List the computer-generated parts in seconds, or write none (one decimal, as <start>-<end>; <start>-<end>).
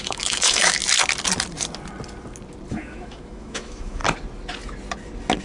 0.0-0.8; 2.7-4.0